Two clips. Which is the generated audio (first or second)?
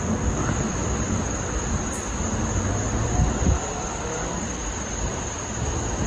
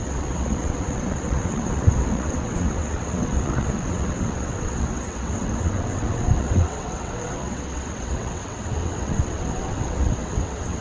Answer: second